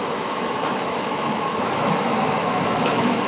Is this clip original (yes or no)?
no